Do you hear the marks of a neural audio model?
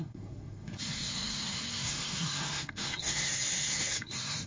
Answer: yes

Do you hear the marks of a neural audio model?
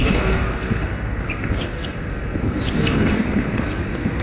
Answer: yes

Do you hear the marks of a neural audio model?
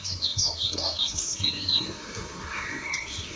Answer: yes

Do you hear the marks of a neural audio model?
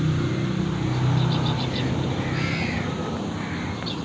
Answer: no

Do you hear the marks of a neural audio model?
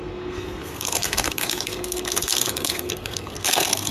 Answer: yes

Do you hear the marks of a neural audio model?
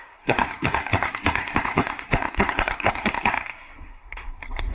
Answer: yes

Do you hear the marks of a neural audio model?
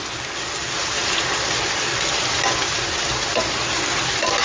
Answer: no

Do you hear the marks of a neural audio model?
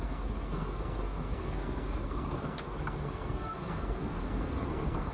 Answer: yes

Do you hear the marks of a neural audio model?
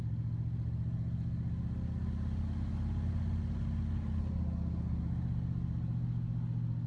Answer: no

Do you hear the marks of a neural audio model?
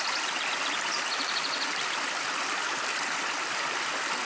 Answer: no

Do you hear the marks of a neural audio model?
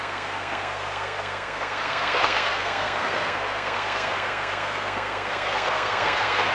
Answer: yes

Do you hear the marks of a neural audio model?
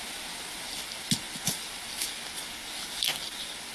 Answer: no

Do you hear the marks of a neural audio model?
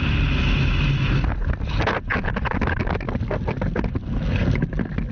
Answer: no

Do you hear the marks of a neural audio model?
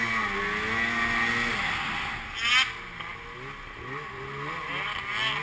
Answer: no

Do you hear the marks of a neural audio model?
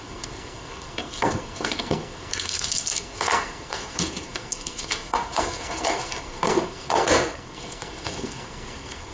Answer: yes